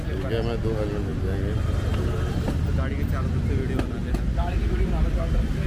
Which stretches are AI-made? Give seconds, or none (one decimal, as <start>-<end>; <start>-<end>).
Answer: none